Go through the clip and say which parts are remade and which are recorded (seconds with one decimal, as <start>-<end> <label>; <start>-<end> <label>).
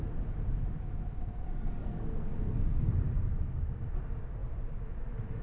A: 0.0-1.2 recorded; 1.2-2.9 remade; 2.9-3.3 recorded; 3.3-4.0 remade; 4.0-5.4 recorded